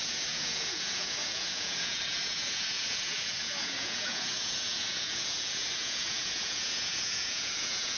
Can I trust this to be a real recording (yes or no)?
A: no